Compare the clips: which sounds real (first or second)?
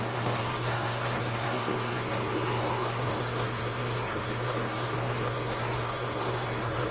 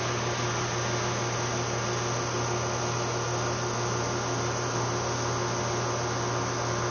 second